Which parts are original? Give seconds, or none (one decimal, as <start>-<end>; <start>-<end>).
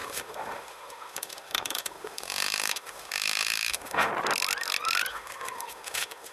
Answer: 4.1-5.1